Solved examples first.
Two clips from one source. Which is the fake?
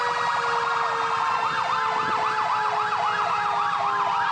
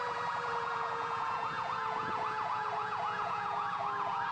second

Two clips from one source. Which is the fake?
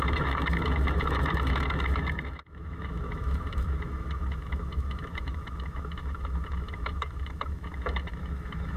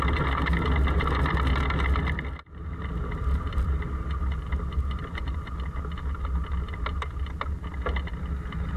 first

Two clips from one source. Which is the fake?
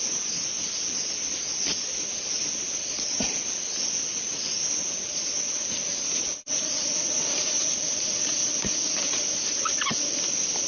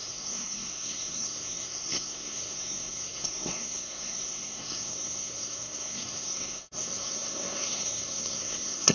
second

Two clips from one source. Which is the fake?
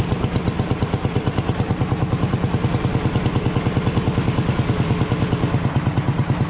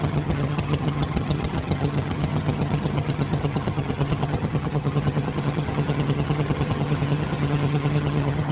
second